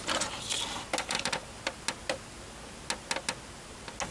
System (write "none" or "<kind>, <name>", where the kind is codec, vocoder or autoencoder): none